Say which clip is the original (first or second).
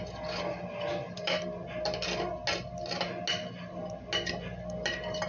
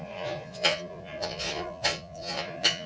first